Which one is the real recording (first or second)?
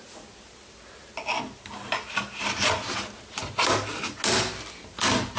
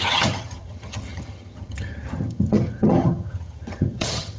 first